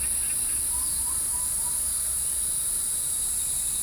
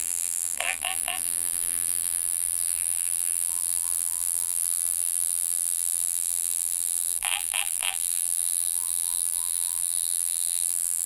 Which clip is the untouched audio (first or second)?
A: first